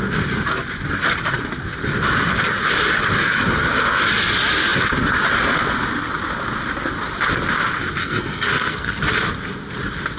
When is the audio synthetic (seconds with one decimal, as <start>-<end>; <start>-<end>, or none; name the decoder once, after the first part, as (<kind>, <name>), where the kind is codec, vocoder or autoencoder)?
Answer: 8.0-9.0 (codec, SNAC)